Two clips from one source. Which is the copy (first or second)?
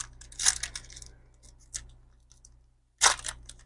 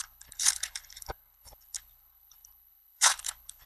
second